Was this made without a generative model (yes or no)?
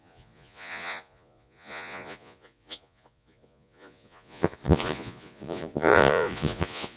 no